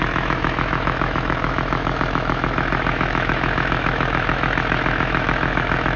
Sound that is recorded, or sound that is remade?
remade